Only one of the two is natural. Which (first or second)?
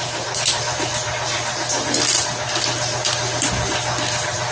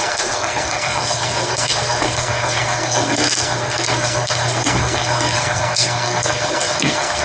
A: first